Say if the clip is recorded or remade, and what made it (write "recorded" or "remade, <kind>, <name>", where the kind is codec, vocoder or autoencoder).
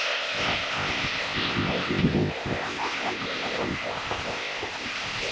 remade, codec, ZipCodec